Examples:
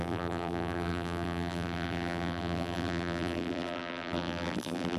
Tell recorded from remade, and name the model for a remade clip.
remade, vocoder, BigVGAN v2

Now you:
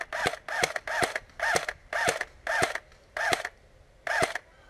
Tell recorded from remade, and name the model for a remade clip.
recorded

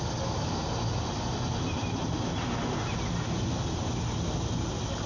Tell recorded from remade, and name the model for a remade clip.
recorded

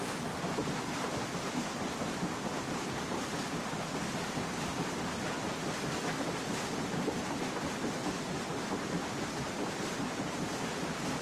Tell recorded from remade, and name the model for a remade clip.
recorded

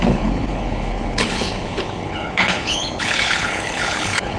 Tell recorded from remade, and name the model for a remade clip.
remade, codec, HILCodec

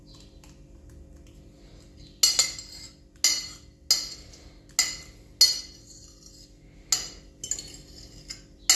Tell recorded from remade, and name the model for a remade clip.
recorded